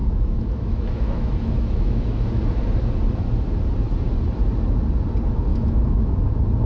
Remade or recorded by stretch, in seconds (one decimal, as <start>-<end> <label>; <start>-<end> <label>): 0.0-2.4 remade; 2.4-5.5 recorded; 5.5-6.2 remade; 6.2-6.7 recorded